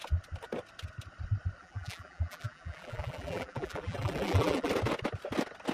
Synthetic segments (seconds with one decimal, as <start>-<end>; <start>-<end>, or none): 1.6-4.7